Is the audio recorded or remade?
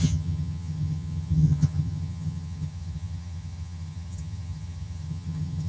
remade